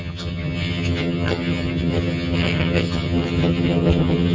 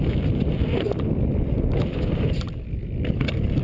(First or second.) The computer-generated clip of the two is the first